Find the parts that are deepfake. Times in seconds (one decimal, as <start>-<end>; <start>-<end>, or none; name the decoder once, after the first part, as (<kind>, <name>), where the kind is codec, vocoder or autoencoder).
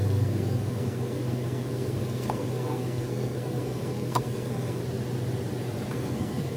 0.0-4.8 (codec, SNAC); 5.9-6.6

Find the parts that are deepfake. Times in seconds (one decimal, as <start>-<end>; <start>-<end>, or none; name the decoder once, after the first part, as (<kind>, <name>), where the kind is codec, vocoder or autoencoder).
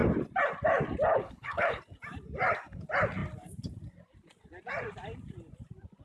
1.2-1.8 (codec, HILCodec)